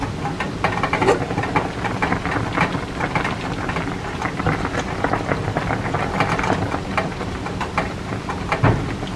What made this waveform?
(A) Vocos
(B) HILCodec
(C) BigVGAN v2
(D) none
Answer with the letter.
D